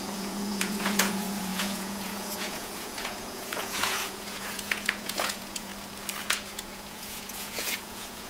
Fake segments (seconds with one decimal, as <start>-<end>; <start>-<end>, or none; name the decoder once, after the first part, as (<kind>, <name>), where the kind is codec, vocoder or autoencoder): 0.0-5.7 (vocoder, Vocos); 6.2-8.3